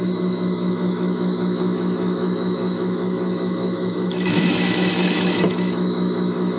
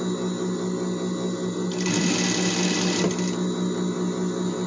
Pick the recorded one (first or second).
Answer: second